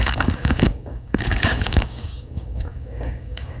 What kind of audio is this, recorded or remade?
remade